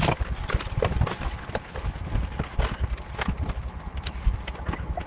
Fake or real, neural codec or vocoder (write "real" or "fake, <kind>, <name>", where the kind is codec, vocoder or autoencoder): real